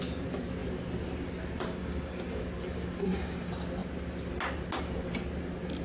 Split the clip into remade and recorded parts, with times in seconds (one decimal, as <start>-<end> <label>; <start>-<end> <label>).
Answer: 0.0-1.8 recorded; 1.8-2.4 remade; 2.4-5.8 recorded